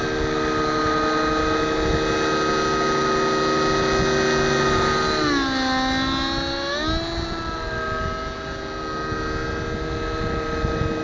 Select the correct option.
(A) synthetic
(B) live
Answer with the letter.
B